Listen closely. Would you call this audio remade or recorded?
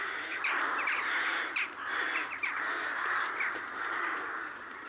remade